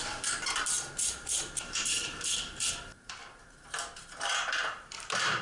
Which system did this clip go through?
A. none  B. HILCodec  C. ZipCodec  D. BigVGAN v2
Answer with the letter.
D